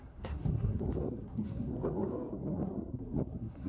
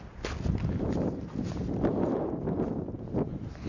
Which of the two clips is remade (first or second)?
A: first